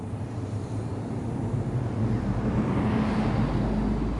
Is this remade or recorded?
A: remade